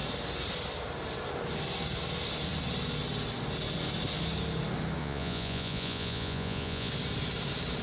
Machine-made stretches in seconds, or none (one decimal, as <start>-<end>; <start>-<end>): 5.0-6.9